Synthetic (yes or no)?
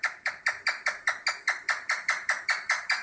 no